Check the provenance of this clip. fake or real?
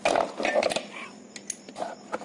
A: real